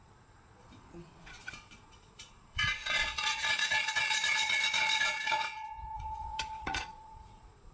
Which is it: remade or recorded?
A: remade